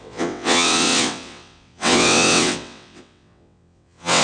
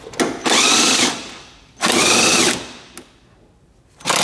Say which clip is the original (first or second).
second